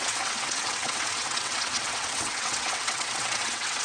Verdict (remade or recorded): remade